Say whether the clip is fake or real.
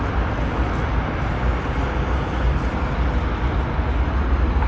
real